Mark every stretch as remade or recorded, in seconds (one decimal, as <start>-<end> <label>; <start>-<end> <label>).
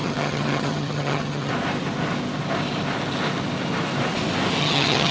0.0-1.5 remade; 1.5-4.6 recorded; 4.6-5.1 remade